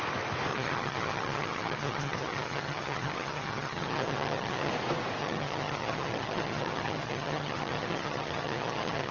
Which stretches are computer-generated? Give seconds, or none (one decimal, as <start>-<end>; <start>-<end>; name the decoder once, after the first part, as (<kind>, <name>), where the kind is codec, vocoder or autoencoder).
0.5-4.7 (vocoder, HiFi-GAN); 5.2-9.1